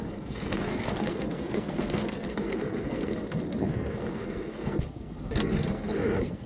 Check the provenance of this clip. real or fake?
fake